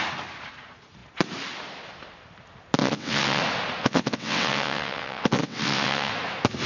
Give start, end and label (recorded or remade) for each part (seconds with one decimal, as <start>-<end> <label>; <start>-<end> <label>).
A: 0.0-2.8 recorded; 2.8-3.4 remade; 3.4-3.8 recorded; 3.8-6.1 remade; 6.1-6.7 recorded